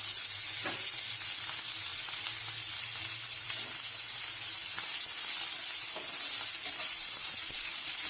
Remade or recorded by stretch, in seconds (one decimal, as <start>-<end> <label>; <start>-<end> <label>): 0.0-8.1 recorded